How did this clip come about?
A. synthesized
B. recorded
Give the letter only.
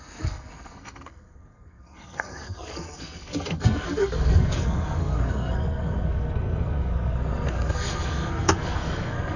A